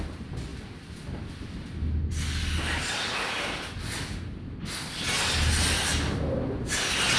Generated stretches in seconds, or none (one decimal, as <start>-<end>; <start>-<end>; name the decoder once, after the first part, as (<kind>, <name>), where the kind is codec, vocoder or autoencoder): none